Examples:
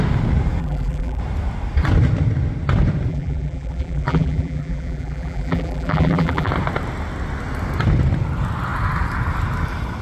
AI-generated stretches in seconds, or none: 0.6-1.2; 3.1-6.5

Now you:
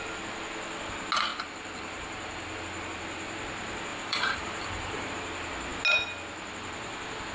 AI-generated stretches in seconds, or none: 1.3-2.6; 3.9-5.1

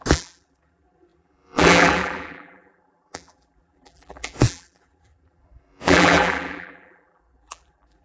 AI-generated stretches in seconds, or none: 0.0-8.0

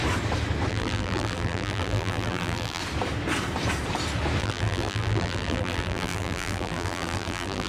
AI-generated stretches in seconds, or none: 0.7-2.8; 4.4-7.7

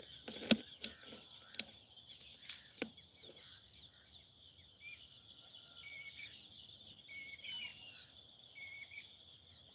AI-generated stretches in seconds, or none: 5.5-6.3; 7.7-9.7

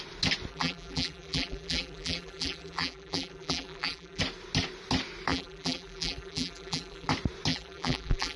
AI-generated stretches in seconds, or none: 0.5-4.2; 5.3-7.1; 7.5-8.4